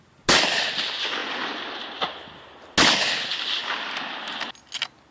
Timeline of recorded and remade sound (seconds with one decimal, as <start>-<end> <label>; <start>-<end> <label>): 0.0-5.1 recorded